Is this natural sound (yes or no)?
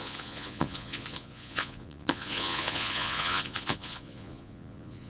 no